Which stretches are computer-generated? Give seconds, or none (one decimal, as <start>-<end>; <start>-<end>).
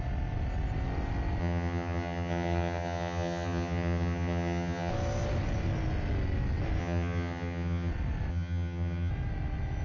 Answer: 1.4-4.9; 6.8-7.9; 8.3-9.1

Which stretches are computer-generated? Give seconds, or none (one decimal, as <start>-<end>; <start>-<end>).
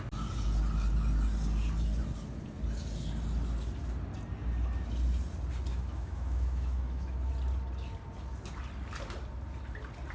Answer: 5.7-7.3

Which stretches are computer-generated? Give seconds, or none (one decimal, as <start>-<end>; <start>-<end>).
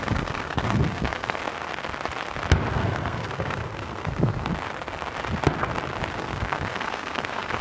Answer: 0.0-1.4; 2.7-4.5; 6.2-7.6